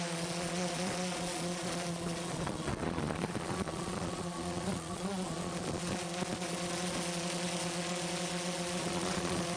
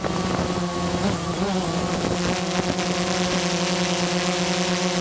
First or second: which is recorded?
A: second